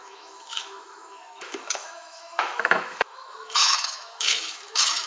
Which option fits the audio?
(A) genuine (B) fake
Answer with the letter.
B